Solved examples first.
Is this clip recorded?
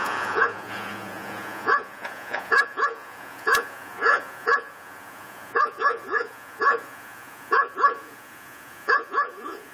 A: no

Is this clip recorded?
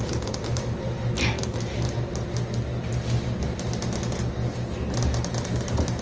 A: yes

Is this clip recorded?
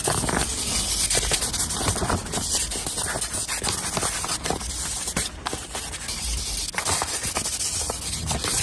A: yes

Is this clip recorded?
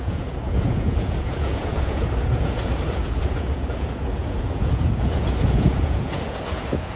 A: no